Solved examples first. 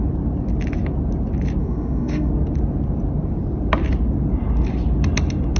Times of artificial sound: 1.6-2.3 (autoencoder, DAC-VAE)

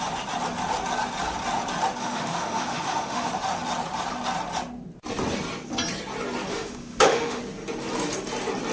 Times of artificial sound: 2.0-3.3 (autoencoder, DAC-VAE); 6.5-7.4

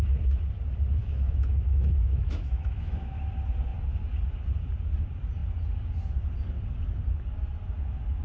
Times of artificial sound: 1.0-3.2 (autoencoder, DAC-VAE)